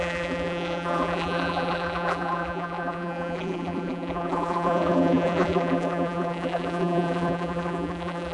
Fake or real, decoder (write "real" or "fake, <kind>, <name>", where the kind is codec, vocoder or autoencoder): fake, vocoder, BigVGAN v2